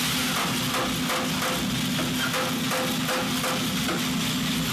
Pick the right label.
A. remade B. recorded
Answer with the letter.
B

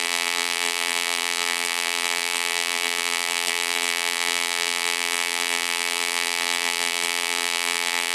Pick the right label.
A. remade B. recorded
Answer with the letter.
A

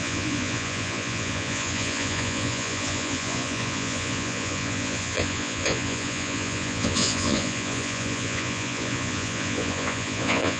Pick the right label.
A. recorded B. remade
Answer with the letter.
B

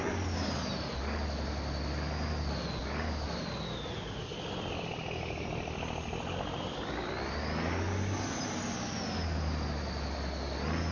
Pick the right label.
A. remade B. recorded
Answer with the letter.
B